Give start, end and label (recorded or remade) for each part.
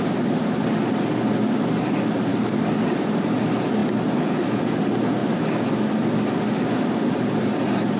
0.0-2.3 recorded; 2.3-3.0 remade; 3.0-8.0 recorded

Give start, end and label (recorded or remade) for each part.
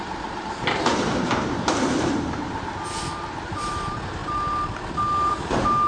0.0-4.2 remade; 4.2-5.3 recorded; 5.3-5.9 remade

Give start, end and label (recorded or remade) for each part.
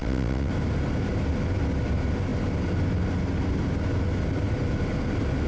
0.0-0.5 remade; 0.5-5.5 recorded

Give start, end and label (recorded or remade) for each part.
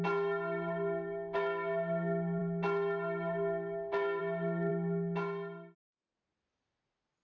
0.0-7.2 recorded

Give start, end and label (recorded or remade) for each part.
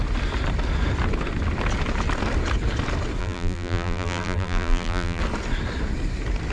0.0-3.2 recorded; 3.2-5.2 remade; 5.2-6.5 recorded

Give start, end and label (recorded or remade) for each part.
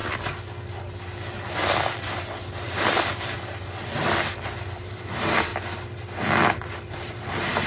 0.0-4.6 recorded; 4.6-5.5 remade; 5.5-6.5 recorded; 6.5-7.7 remade